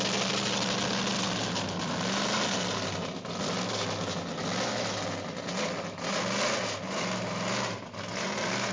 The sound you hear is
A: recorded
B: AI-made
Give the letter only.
A